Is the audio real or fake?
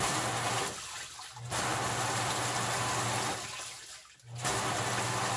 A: real